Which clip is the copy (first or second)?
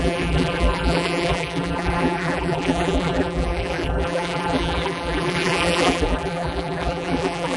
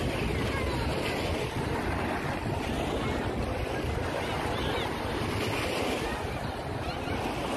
first